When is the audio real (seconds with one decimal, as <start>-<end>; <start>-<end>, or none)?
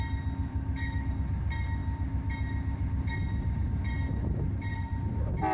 0.0-0.5; 1.1-5.5